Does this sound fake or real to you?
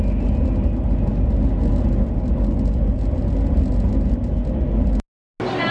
real